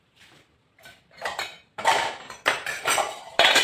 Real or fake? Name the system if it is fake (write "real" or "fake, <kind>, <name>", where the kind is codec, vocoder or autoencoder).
fake, vocoder, BigVGAN v2